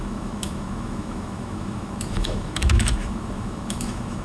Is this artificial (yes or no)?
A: yes